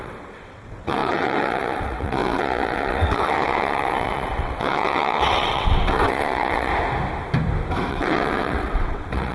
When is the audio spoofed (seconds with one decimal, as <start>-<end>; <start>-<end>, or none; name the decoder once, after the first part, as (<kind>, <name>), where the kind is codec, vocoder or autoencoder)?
0.0-6.7 (vocoder, WaveNeXt); 7.9-9.3